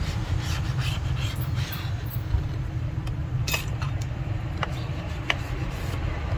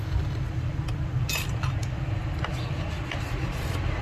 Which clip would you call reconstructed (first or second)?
first